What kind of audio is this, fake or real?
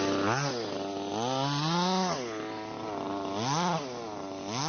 real